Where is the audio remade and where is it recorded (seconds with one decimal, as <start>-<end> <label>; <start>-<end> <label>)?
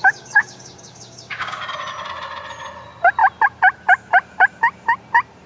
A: 0.0-1.6 remade; 1.6-5.5 recorded